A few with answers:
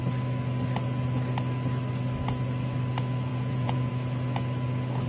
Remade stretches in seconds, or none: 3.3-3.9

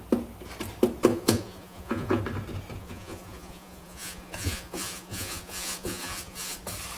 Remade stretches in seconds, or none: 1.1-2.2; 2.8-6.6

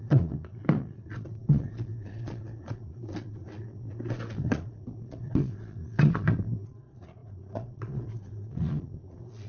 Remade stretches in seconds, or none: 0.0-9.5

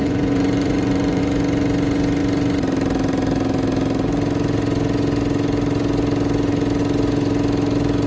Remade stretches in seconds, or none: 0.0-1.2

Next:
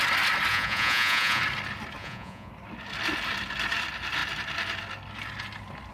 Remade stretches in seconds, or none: 0.5-1.4; 2.0-2.5

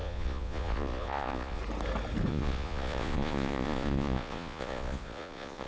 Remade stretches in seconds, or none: 0.0-1.6; 2.3-5.7

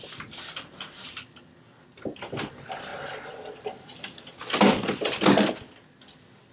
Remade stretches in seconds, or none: none

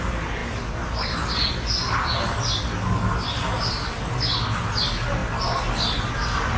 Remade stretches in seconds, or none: none